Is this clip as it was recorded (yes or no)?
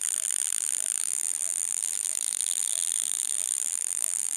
no